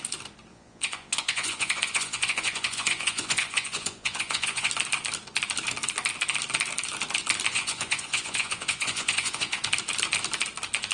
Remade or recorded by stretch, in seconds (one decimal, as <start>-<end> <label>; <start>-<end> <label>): 0.0-0.5 recorded; 0.5-4.7 remade; 4.7-7.5 recorded; 7.5-9.6 remade; 9.6-10.9 recorded